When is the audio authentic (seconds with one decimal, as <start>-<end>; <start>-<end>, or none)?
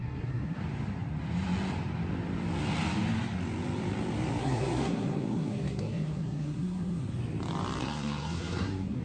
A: 0.6-4.4; 7.1-7.8